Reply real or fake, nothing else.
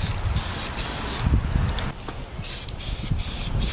real